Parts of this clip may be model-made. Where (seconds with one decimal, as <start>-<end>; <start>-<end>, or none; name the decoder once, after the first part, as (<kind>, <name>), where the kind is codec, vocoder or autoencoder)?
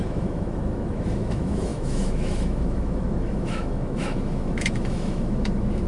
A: 0.0-5.9 (autoencoder, DAC-VAE)